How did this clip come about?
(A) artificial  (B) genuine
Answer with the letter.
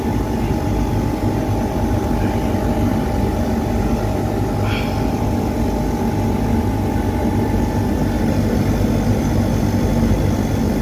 B